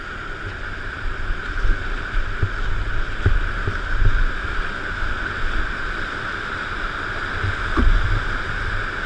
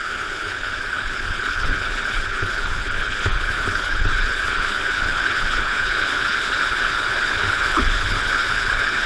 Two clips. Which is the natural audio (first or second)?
first